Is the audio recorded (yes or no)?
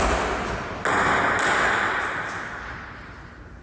yes